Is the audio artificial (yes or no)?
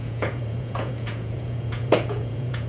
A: yes